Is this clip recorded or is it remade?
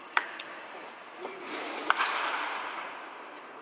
remade